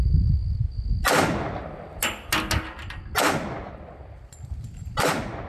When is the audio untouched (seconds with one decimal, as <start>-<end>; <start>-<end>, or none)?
0.0-5.5